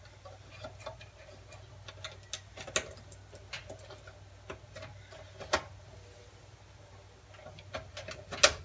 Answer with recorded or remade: recorded